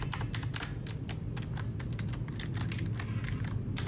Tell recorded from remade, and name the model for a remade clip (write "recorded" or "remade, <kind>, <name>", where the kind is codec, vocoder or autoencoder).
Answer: recorded